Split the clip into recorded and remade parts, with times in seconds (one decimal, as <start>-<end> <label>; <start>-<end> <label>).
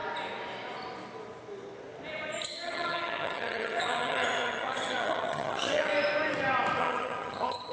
0.0-2.5 recorded; 2.5-5.9 remade; 5.9-6.8 recorded; 6.8-7.7 remade